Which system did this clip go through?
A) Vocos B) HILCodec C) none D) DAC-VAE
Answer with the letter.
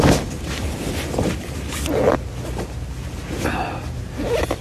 C